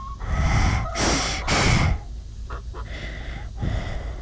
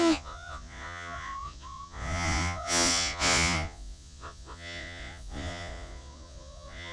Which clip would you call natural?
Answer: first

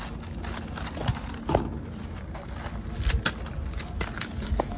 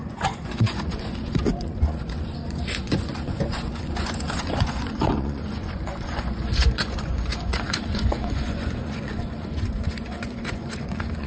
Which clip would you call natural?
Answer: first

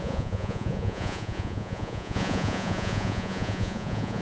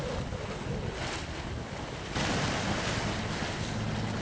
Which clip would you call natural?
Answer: second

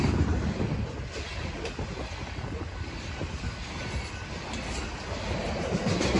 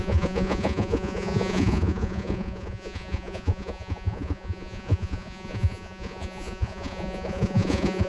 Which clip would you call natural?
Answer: first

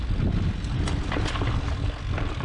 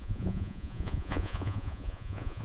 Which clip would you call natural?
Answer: first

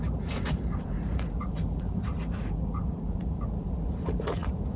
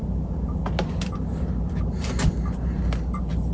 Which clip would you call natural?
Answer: second